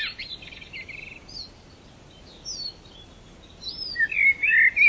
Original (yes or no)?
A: yes